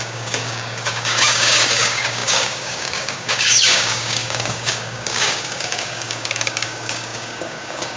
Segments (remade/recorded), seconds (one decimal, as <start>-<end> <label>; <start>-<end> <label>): 0.0-8.0 remade